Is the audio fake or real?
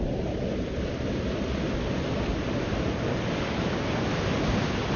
real